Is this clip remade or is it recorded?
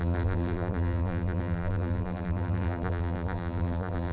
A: remade